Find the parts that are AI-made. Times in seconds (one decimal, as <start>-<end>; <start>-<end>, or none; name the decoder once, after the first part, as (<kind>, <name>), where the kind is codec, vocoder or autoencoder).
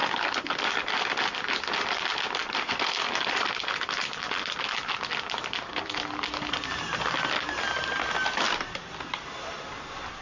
0.0-0.7 (vocoder, BigVGAN v2); 2.4-4.7